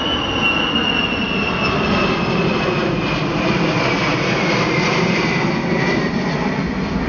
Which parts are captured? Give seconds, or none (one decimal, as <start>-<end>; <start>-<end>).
0.0-7.1